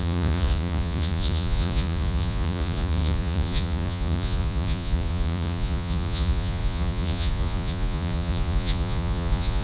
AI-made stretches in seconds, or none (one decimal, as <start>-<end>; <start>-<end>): 0.0-9.6